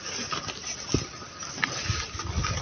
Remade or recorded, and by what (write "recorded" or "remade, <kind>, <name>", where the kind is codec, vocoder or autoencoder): recorded